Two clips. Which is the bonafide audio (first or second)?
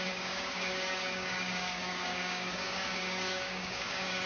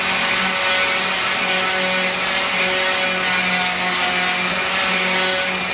second